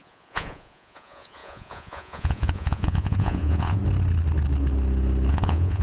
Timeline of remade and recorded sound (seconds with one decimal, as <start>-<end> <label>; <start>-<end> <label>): 0.0-3.8 remade; 3.8-5.3 recorded; 5.3-5.8 remade